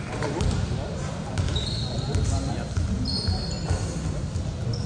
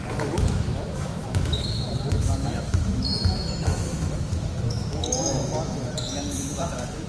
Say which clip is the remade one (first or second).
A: second